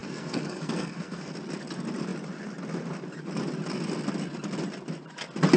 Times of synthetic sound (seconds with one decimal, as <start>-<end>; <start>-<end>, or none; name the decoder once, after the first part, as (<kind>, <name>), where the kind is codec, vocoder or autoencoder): 0.0-1.3 (codec, SNAC)